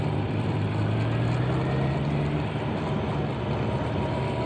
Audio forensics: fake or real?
real